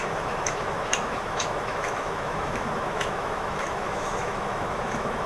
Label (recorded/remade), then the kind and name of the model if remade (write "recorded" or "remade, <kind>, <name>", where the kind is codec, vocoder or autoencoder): remade, autoencoder, DAC-VAE